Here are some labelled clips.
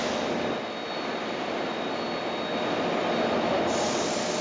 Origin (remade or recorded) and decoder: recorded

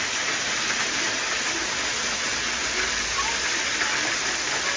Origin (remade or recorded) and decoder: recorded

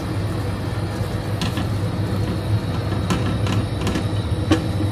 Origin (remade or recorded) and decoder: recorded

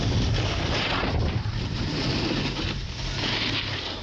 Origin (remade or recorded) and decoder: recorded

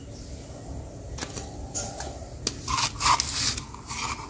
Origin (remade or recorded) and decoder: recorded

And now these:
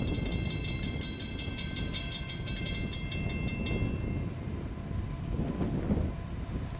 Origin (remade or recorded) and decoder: recorded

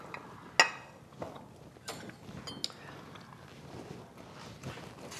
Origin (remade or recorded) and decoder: recorded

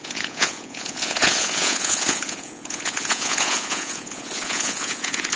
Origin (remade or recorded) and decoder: remade, vocoder, Vocos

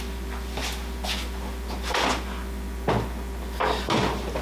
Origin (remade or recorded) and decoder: recorded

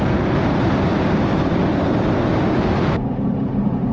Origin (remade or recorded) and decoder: recorded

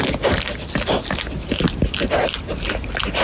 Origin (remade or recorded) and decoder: recorded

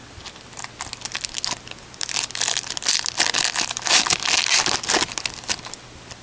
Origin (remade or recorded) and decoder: recorded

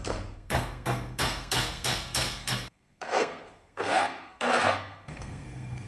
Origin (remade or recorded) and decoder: remade, codec, SNAC